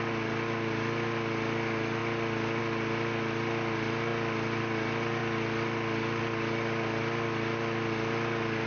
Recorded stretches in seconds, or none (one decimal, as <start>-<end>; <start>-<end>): 0.0-8.7